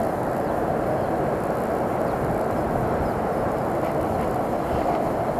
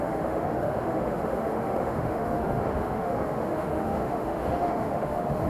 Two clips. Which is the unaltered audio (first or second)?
first